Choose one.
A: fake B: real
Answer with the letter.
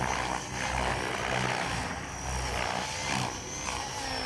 B